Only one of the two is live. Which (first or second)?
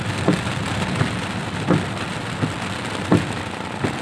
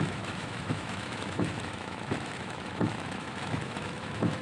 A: first